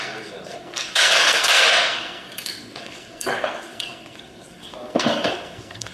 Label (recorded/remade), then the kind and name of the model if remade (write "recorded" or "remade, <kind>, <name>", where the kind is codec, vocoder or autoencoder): remade, codec, SNAC